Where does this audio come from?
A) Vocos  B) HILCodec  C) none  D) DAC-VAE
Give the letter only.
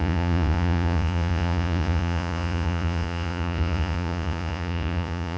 A